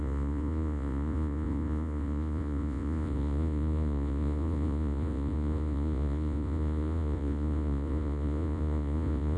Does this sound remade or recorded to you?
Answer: remade